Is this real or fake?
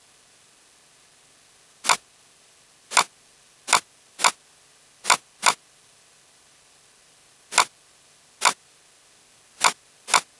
real